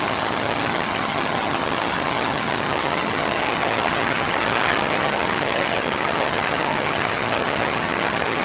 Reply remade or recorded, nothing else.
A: remade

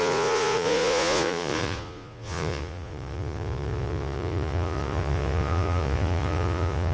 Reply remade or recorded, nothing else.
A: remade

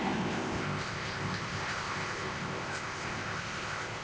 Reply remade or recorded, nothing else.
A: remade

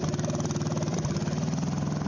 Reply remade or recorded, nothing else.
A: recorded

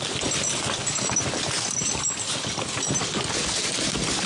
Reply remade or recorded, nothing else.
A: recorded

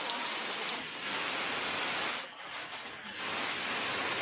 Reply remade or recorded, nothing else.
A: recorded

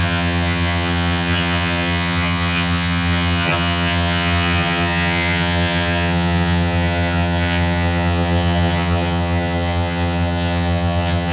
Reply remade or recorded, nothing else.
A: remade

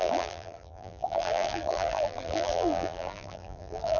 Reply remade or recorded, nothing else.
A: remade